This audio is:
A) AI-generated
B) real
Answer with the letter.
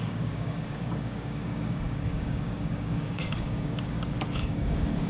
A